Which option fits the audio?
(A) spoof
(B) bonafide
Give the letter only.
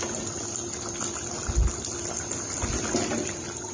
B